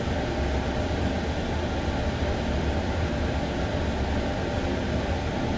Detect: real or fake real